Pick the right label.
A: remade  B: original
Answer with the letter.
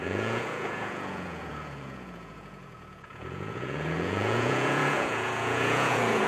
A